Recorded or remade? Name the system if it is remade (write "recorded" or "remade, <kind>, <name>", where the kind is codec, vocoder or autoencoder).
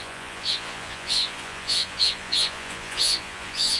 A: remade, vocoder, Vocos